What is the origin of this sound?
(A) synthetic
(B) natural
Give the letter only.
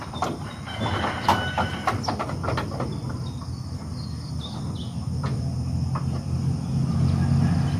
B